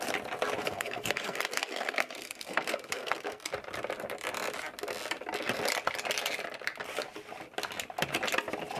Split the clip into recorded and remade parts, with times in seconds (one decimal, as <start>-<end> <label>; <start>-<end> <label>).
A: 0.0-0.6 recorded; 0.6-3.4 remade; 3.4-8.8 recorded